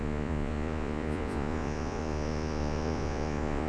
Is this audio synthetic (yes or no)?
yes